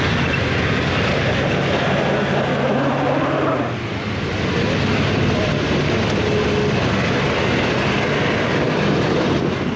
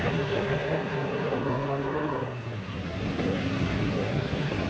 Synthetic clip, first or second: second